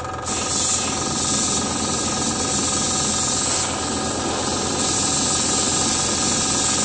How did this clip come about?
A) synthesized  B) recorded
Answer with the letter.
B